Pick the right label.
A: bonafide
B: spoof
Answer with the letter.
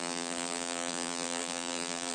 B